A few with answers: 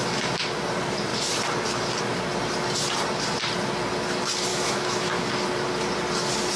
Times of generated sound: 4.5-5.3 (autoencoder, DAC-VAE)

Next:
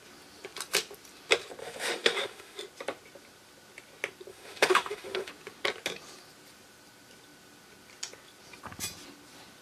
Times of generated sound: 1.6-2.6 (autoencoder, DAC-VAE); 4.3-5.3